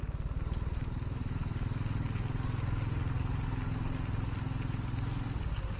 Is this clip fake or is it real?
real